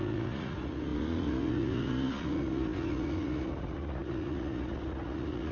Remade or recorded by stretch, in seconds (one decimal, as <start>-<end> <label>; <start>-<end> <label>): 0.0-5.5 remade